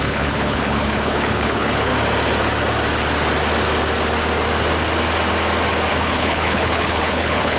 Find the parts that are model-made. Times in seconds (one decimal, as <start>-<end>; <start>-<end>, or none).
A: 0.0-1.9; 5.9-7.6